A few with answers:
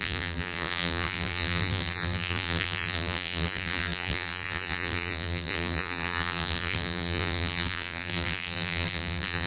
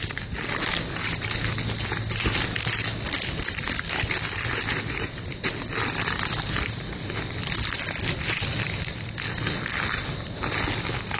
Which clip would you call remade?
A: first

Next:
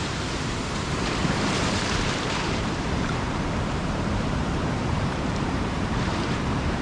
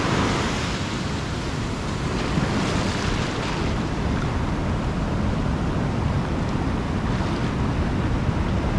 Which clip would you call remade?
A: first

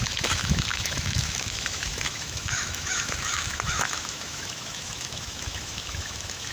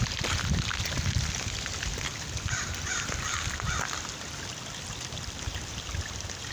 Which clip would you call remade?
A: first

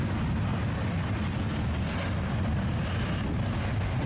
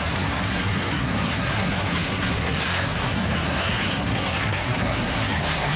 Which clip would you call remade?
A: second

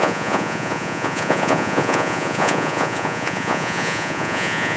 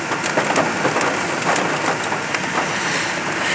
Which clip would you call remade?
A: first